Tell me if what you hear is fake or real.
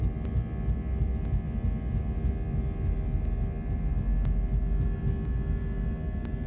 real